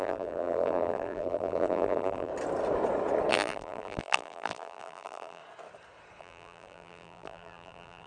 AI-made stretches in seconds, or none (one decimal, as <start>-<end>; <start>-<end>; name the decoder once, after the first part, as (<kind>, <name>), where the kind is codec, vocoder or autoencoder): 0.0-2.3 (vocoder, BigVGAN v2); 3.3-5.4; 6.2-8.1